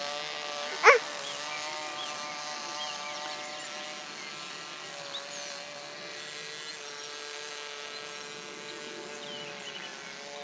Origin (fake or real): real